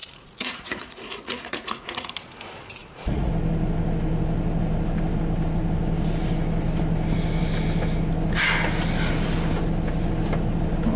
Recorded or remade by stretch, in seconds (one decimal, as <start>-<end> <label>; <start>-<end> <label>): 0.0-2.1 remade; 2.1-2.8 recorded; 2.8-3.3 remade; 3.3-11.0 recorded